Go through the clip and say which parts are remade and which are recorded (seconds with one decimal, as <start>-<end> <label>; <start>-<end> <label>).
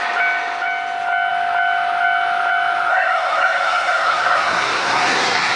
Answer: 0.0-2.9 recorded; 2.9-5.6 remade